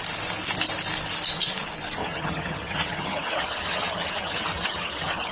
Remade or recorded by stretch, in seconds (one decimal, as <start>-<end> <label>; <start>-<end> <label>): 0.0-2.0 recorded; 2.0-5.3 remade